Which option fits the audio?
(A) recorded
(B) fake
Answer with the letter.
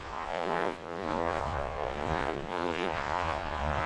B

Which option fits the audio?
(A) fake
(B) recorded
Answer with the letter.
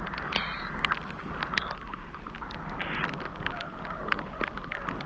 B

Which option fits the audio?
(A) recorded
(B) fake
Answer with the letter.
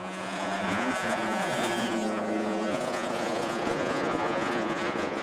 B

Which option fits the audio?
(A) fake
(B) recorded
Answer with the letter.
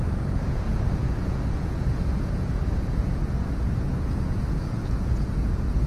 A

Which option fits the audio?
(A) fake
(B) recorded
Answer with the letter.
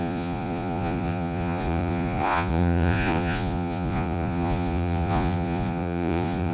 A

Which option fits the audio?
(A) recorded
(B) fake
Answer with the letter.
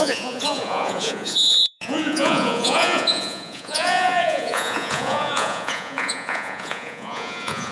B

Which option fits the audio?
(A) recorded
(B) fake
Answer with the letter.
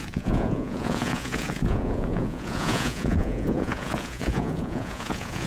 B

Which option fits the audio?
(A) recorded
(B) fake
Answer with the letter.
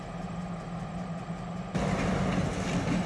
A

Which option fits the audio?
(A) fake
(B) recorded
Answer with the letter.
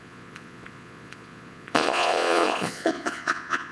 A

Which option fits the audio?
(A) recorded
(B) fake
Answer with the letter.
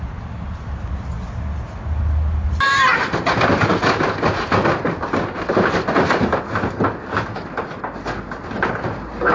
A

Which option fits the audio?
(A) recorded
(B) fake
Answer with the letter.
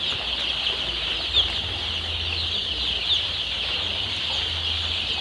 A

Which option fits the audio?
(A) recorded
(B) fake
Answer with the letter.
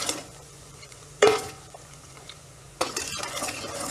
B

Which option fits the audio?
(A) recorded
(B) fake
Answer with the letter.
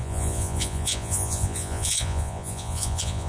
B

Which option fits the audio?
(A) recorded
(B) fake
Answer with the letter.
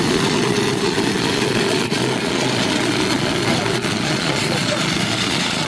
B